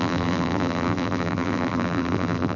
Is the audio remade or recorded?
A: remade